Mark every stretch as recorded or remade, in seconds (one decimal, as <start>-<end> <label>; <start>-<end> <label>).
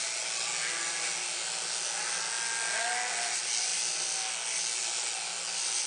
0.0-5.9 recorded